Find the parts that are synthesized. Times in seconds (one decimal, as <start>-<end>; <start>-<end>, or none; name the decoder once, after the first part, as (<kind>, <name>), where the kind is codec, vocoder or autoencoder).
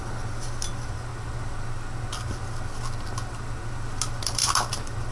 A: none